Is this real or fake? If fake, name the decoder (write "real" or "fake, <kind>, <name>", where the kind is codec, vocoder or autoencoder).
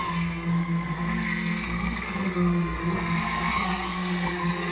fake, codec, SNAC